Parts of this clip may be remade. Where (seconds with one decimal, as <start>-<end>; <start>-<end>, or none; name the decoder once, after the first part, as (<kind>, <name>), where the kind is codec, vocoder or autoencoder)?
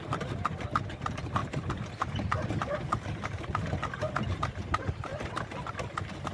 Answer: 0.0-5.1 (vocoder, BigVGAN v2); 5.7-6.3